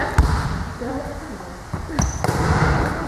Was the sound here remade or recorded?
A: remade